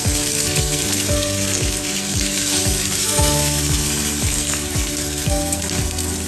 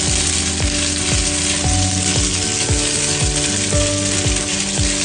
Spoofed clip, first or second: first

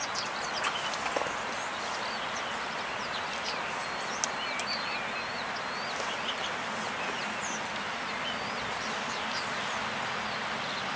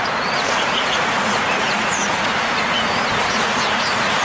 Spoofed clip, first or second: second